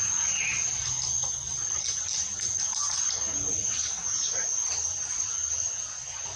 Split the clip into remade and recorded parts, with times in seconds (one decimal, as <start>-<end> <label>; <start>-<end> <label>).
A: 0.0-6.4 recorded